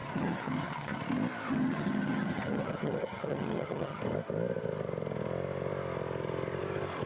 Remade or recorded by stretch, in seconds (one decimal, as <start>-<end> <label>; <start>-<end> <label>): 0.0-1.0 remade; 1.0-1.5 recorded; 1.5-4.0 remade; 4.0-7.1 recorded